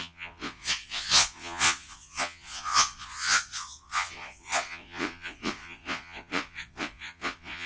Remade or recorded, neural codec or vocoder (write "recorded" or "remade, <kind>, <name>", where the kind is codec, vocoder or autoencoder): remade, vocoder, Vocos